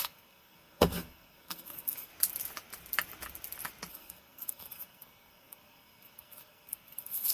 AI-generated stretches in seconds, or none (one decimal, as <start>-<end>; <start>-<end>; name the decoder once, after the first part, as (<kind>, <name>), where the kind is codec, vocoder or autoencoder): 0.0-2.1 (codec, SNAC); 3.9-7.3